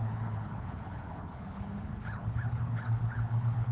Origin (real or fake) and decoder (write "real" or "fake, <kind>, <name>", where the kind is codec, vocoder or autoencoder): fake, codec, HILCodec